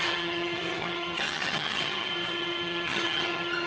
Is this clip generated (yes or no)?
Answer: yes